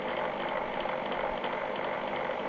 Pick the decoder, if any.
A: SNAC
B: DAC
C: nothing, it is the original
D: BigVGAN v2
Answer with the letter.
D